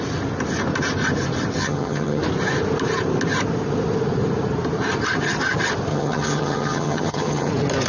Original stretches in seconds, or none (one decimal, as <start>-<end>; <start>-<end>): 0.0-1.6; 2.2-5.9; 7.5-7.9